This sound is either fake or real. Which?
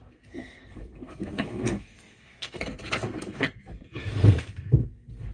fake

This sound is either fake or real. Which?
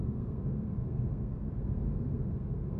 fake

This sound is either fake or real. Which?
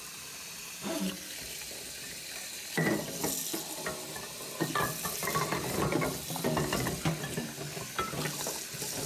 real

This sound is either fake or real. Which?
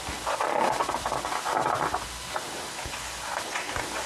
real